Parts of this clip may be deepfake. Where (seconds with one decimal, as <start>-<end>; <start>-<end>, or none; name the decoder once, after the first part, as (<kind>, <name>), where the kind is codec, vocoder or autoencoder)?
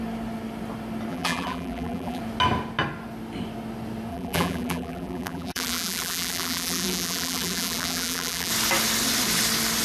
1.1-2.2 (vocoder, BigVGAN v2); 4.1-8.5